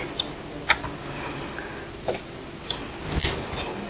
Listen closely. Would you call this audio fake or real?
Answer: real